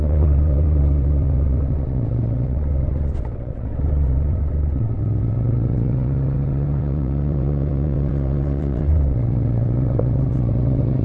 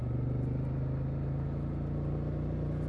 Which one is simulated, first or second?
first